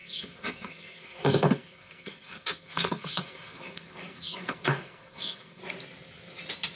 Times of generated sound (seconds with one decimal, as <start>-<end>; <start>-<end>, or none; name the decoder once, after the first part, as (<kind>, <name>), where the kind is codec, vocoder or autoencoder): 0.0-5.6 (codec, SNAC)